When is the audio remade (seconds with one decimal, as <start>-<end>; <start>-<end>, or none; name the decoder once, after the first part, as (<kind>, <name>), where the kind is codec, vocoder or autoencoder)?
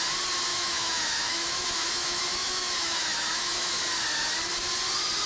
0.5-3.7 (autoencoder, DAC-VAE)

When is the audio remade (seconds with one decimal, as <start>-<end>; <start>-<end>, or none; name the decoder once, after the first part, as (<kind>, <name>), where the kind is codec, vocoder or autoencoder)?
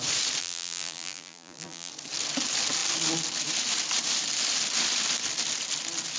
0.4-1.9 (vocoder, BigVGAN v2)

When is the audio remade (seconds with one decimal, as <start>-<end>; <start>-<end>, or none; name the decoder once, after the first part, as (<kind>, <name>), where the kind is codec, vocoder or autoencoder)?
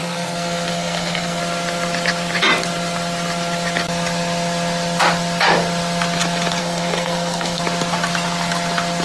0.0-1.4 (codec, SNAC); 6.6-7.6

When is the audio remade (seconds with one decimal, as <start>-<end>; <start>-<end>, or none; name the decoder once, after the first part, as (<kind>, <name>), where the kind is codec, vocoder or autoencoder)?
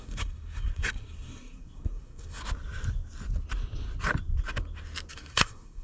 0.0-2.4 (codec, SNAC); 5.1-5.8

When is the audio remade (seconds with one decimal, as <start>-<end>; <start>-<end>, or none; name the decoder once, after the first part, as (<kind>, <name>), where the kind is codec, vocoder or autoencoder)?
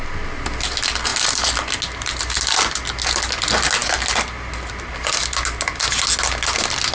none